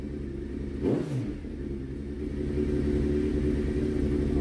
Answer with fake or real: real